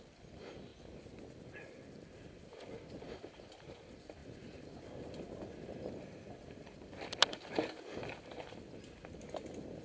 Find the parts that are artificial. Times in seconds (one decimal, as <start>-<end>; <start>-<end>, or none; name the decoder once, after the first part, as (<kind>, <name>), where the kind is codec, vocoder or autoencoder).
none